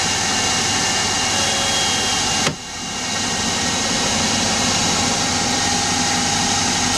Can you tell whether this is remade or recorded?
recorded